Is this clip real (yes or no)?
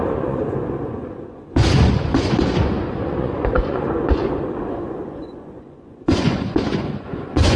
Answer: no